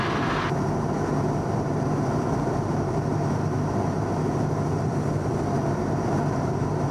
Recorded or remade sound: recorded